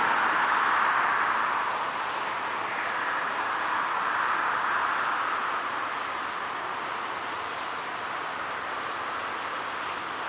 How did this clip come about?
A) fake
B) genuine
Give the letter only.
B